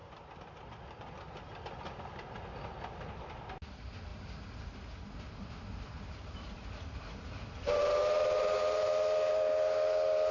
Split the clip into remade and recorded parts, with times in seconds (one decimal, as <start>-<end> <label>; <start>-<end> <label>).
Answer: 0.0-10.3 recorded